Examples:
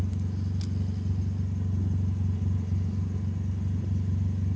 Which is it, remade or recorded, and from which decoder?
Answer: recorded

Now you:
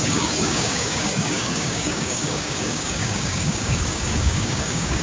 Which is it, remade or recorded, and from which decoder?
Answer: remade, codec, DAC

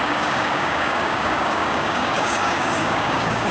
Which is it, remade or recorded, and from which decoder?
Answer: remade, codec, DAC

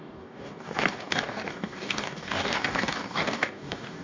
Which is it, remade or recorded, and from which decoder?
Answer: remade, codec, DAC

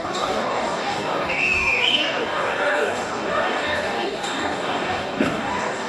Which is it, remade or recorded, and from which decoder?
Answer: remade, codec, DAC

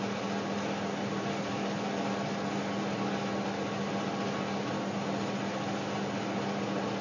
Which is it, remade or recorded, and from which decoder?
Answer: recorded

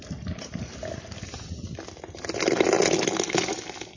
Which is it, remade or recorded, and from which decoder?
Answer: recorded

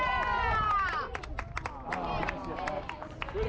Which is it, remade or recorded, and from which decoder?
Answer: recorded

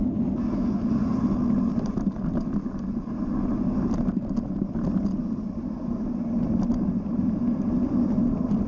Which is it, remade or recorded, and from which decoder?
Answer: recorded